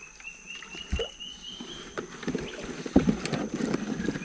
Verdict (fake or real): real